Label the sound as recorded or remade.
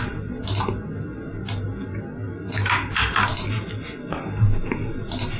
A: recorded